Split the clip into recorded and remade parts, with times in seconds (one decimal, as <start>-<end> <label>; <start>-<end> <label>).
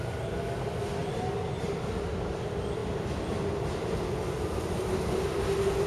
0.0-5.9 recorded